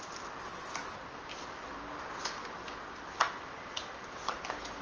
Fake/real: real